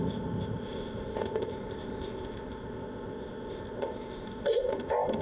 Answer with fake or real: fake